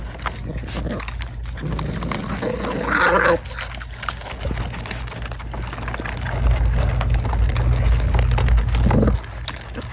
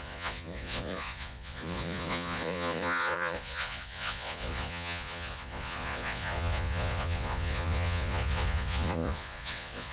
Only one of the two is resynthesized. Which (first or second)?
second